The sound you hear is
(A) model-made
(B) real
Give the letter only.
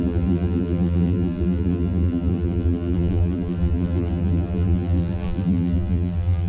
A